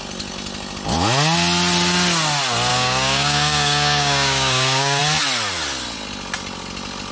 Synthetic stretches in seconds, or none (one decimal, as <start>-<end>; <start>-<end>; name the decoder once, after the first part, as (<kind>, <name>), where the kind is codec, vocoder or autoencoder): 2.7-5.0 (codec, DAC)